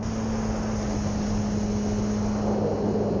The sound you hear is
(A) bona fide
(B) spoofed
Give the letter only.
A